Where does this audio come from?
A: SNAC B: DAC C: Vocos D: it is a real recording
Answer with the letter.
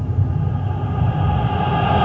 D